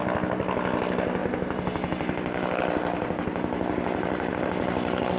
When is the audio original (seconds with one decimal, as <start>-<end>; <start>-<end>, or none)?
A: 0.0-5.2